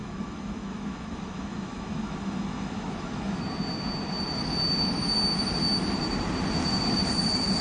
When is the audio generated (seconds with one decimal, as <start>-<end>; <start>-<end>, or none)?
0.0-3.4